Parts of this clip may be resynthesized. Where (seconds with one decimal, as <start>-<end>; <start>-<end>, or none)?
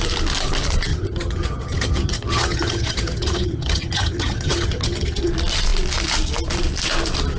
0.9-5.3